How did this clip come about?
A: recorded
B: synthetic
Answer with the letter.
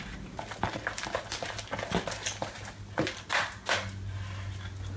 A